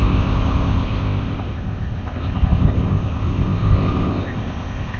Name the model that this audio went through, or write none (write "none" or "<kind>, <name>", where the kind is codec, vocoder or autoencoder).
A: codec, ZipCodec